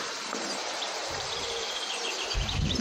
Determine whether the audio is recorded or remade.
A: remade